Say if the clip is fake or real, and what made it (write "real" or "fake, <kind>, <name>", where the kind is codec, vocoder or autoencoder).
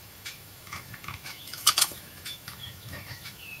fake, autoencoder, DAC-VAE